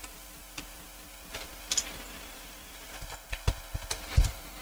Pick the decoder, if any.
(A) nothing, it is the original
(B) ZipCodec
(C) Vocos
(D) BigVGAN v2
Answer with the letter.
A